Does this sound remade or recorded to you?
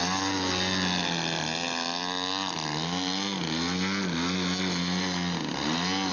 recorded